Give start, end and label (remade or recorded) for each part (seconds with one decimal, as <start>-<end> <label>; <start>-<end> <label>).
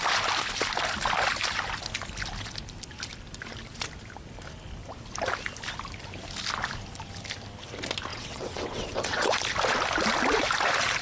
0.0-8.1 recorded; 8.1-9.4 remade; 9.4-11.0 recorded